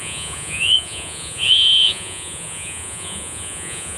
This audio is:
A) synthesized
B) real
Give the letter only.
A